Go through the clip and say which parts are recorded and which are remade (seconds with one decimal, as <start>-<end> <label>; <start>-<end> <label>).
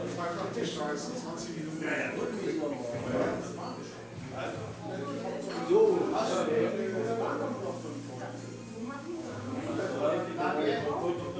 0.0-0.8 remade; 0.8-6.0 recorded; 6.0-6.7 remade; 6.7-8.8 recorded; 8.8-9.9 remade; 9.9-11.4 recorded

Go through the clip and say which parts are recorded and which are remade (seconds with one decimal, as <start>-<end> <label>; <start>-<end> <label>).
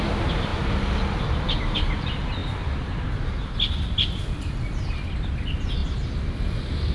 0.0-6.9 recorded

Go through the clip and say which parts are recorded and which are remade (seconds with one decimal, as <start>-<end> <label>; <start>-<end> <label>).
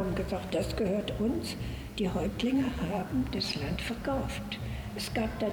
0.0-2.4 recorded; 2.4-3.0 remade; 3.0-5.5 recorded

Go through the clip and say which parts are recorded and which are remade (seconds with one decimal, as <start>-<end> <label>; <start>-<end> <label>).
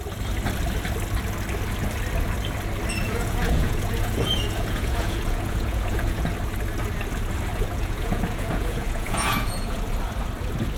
0.0-3.0 recorded; 3.0-6.3 remade; 6.3-7.5 recorded; 7.5-9.8 remade; 9.8-10.8 recorded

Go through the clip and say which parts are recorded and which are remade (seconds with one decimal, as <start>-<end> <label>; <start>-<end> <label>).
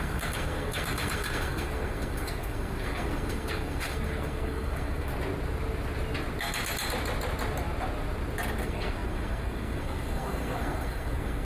0.0-5.1 remade; 5.1-8.6 recorded; 8.6-11.4 remade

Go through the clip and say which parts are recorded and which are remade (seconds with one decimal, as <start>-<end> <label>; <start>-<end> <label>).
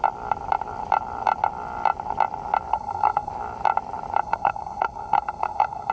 0.0-2.7 recorded; 2.7-3.3 remade; 3.3-4.2 recorded; 4.2-5.9 remade